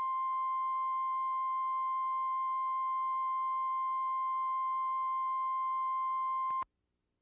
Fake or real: real